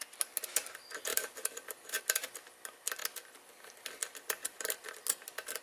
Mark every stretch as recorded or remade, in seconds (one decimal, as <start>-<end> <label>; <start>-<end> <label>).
0.0-1.1 recorded; 1.1-2.0 remade; 2.0-5.6 recorded